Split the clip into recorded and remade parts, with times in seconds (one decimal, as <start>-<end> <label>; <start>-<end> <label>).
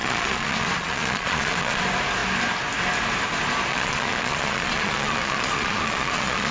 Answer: 0.0-1.8 remade; 1.8-3.7 recorded; 3.7-6.5 remade